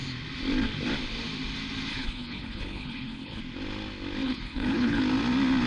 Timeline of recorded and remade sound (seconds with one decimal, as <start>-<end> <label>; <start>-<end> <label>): 0.0-1.9 recorded; 1.9-3.4 remade; 3.4-4.2 recorded; 4.2-5.0 remade; 5.0-5.7 recorded